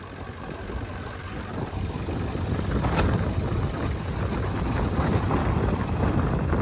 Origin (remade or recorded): recorded